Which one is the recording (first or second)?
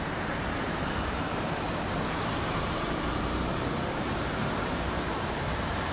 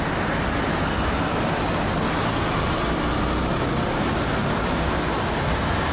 second